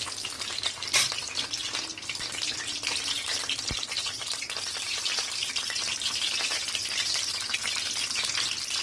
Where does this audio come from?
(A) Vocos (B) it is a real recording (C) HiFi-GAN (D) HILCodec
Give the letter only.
B